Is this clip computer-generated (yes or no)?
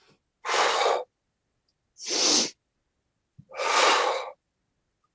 no